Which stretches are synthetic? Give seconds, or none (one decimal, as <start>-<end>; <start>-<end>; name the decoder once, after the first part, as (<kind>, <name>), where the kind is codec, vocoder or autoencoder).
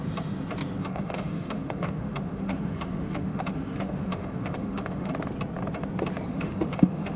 0.8-5.1 (autoencoder, DAC-VAE); 6.3-7.2